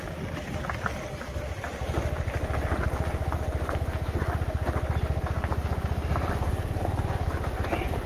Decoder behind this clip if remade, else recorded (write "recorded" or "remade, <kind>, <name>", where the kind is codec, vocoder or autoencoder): recorded